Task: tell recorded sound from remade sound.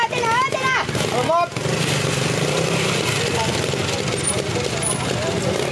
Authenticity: recorded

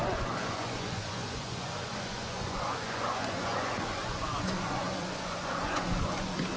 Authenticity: remade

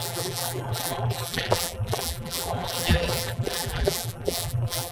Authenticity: remade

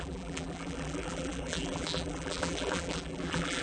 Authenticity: remade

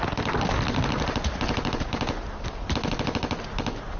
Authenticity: recorded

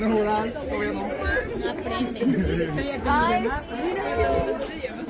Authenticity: recorded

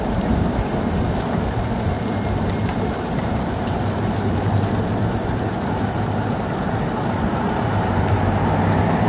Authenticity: remade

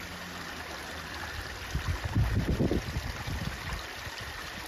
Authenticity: recorded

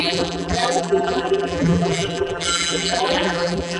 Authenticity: remade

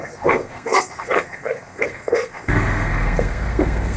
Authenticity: remade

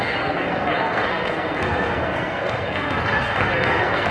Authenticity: remade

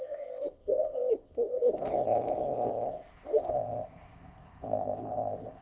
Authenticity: remade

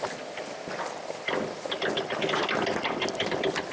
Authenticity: recorded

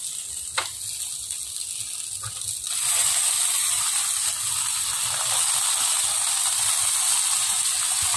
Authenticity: recorded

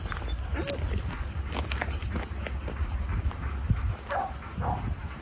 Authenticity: recorded